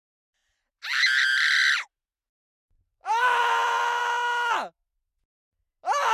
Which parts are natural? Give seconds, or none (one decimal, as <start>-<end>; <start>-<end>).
0.4-2.8; 4.0-6.1